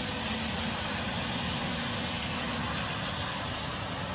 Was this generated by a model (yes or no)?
no